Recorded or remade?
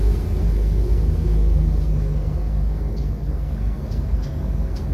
remade